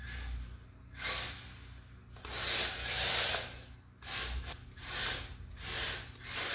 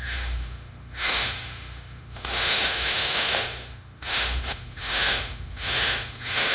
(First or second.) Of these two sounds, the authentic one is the first